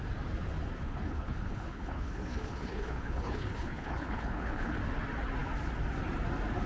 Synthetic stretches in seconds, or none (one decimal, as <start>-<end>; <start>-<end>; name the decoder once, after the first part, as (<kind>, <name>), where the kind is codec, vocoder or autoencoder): 0.8-4.8 (codec, HILCodec)